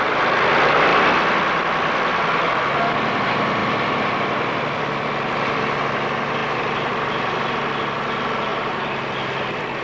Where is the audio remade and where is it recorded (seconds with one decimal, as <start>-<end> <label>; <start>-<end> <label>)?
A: 0.0-3.6 recorded; 3.6-5.6 remade; 5.6-6.4 recorded; 6.4-7.5 remade; 7.5-8.5 recorded; 8.5-9.8 remade